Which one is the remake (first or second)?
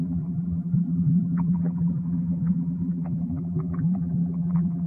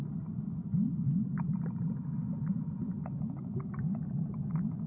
first